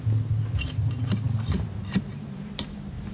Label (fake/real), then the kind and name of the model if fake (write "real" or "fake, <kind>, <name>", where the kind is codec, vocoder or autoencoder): fake, vocoder, BigVGAN v2